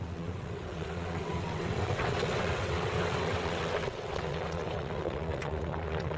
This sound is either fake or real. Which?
fake